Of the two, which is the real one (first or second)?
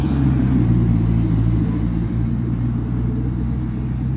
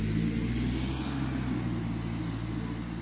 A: second